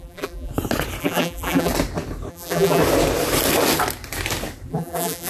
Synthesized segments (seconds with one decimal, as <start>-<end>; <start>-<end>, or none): 0.0-0.5; 1.0-1.7; 2.3-2.8; 4.7-5.3

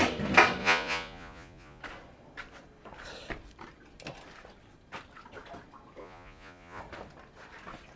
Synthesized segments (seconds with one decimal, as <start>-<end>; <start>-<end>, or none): 0.6-1.8; 6.0-6.8

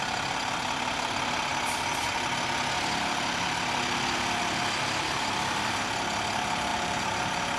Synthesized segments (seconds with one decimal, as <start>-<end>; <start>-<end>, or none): 6.7-7.6

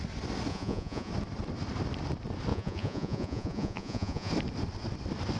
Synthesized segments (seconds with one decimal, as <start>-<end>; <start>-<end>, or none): 0.5-1.1; 2.5-4.3

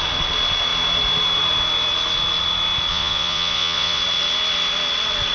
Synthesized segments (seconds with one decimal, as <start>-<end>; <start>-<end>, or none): 2.9-4.0

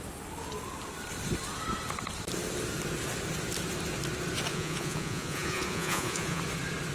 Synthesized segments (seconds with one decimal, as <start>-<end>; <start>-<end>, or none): 4.5-6.4

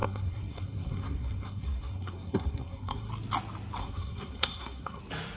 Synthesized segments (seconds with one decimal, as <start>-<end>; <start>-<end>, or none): 0.0-3.1; 3.8-5.0

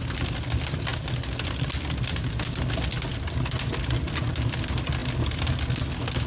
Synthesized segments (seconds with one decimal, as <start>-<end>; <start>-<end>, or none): none